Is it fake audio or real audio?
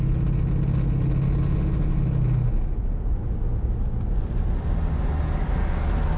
real